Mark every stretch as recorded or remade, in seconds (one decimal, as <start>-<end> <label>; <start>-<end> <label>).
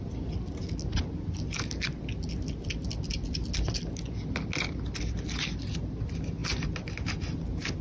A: 0.0-7.8 recorded